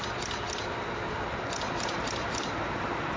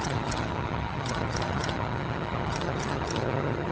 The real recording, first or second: first